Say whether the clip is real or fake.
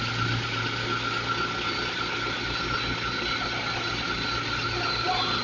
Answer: real